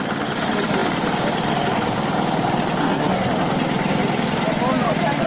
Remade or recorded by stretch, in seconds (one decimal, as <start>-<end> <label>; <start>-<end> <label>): 0.0-2.8 recorded; 2.8-3.3 remade; 3.3-5.3 recorded